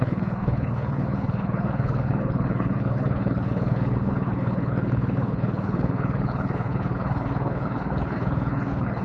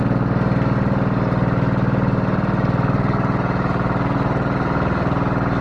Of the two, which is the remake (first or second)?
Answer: first